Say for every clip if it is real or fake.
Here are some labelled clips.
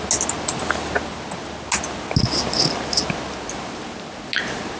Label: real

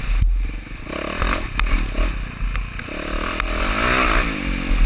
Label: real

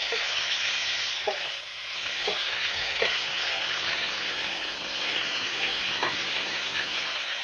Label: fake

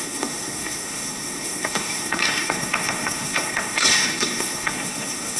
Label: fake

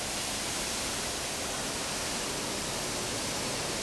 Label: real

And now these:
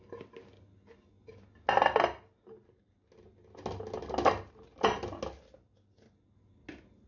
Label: real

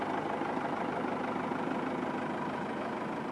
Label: real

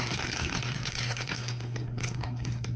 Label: fake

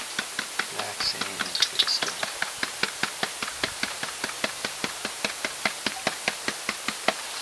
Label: real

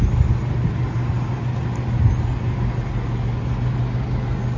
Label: real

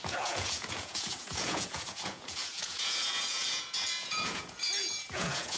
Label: fake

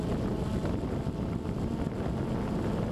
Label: real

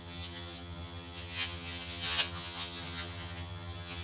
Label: fake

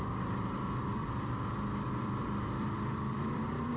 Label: fake